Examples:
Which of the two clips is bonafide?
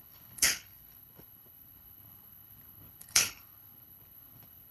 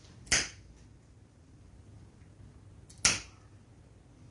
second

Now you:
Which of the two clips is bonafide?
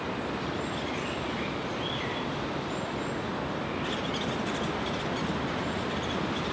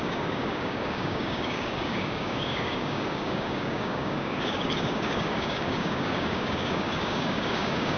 first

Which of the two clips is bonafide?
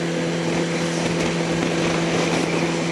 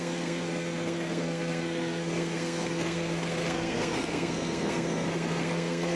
first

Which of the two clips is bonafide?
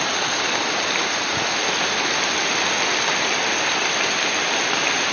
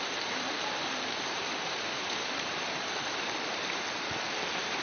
first